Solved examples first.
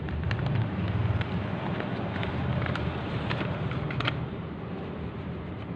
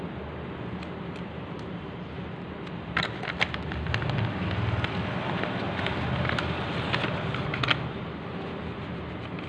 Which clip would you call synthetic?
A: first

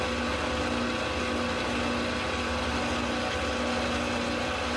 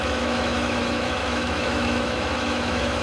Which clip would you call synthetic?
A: second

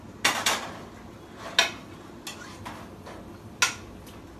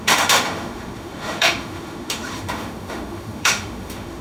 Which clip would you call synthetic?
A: second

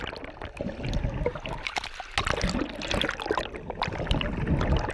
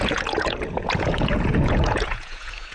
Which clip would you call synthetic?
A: second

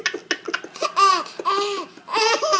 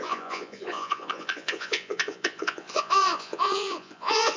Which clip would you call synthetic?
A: second